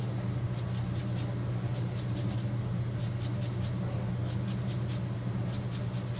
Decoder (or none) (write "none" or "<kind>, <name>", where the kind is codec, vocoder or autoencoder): none